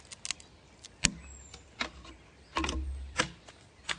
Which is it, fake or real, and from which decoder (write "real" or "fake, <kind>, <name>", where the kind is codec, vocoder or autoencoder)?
real